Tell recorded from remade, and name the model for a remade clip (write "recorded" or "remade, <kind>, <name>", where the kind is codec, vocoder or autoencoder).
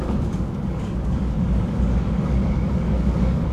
remade, codec, DAC